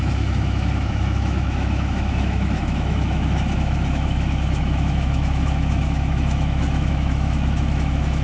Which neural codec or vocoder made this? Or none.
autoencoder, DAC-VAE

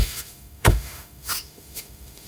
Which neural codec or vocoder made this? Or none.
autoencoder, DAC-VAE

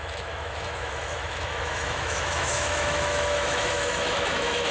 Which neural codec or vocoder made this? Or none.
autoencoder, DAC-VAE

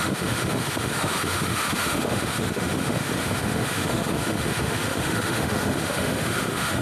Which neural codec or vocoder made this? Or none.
autoencoder, DAC-VAE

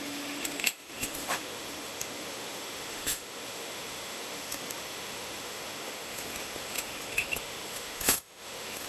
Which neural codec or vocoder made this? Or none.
autoencoder, DAC-VAE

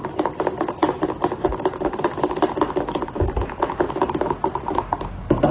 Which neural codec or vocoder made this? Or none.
none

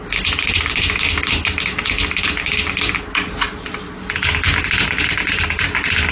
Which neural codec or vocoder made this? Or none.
none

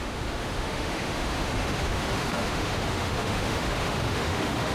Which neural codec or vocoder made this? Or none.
autoencoder, DAC-VAE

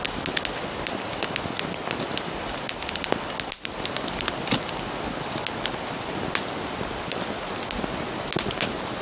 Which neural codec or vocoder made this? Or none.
none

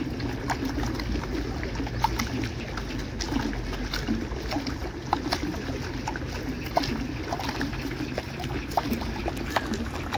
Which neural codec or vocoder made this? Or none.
none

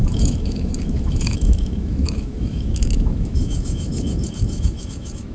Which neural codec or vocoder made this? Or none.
autoencoder, DAC-VAE